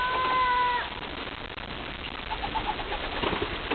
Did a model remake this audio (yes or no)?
no